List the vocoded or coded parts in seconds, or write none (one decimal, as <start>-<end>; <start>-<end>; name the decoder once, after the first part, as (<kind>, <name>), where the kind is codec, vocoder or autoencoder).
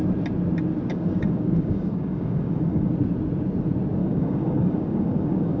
0.9-2.9 (codec, DAC); 4.0-5.6